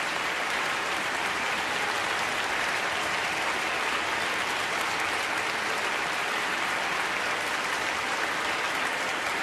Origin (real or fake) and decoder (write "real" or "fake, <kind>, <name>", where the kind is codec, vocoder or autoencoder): real